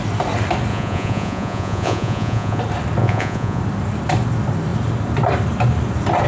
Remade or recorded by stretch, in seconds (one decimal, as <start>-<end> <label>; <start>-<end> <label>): 0.0-0.7 recorded; 0.7-2.6 remade; 2.6-3.0 recorded; 3.0-3.6 remade; 3.6-6.3 recorded